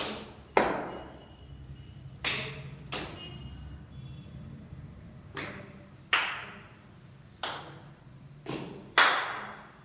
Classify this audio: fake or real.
real